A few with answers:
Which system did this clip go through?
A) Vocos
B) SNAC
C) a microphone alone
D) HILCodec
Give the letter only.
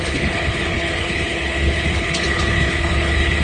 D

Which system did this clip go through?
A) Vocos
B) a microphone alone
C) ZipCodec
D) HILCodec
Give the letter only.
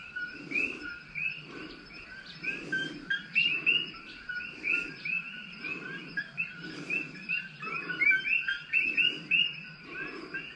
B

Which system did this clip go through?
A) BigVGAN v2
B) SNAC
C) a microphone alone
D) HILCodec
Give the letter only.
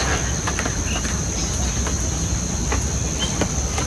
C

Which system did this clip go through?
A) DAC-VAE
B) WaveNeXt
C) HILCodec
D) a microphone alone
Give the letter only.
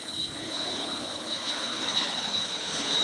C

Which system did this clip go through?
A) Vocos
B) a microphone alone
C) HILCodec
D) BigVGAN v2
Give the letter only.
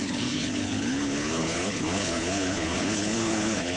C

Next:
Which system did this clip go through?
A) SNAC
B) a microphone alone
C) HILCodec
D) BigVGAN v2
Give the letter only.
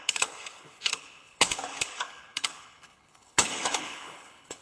C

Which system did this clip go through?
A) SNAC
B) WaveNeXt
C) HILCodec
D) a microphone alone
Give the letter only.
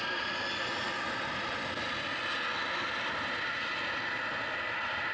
D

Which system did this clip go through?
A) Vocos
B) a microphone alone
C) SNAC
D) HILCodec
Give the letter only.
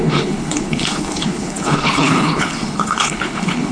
D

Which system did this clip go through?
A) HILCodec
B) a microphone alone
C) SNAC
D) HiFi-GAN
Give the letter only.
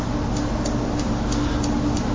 B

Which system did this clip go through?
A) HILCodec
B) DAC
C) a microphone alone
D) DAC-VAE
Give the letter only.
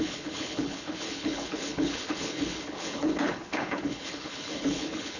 A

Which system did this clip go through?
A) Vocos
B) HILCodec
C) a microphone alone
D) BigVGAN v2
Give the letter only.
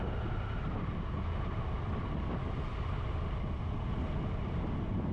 C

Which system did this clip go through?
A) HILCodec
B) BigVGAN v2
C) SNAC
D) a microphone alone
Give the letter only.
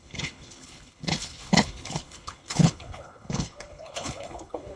A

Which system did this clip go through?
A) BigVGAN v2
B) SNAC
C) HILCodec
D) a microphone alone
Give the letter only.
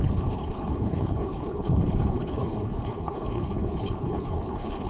C